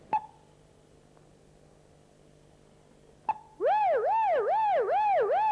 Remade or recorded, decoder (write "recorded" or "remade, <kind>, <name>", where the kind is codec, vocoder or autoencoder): recorded